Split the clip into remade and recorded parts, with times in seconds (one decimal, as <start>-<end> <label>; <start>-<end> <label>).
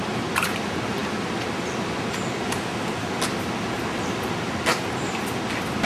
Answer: 0.0-5.8 recorded